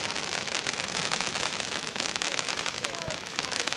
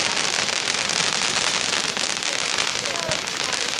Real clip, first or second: second